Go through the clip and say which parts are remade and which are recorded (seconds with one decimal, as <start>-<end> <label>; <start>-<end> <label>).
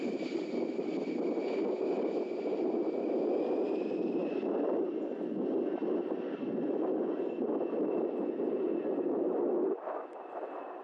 0.0-10.8 recorded